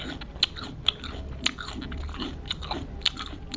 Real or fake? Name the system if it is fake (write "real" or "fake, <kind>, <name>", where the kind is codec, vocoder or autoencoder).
real